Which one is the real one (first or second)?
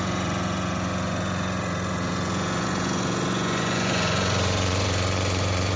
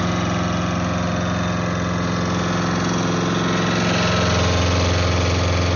second